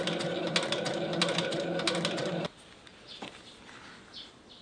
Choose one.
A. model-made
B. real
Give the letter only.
B